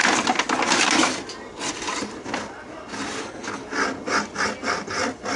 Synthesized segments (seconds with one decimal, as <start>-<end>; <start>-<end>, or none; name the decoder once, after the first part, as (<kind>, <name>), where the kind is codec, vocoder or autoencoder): 3.2-3.6 (codec, HILCodec)